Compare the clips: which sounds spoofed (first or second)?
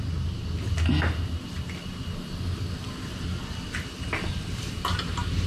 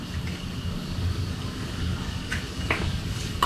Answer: second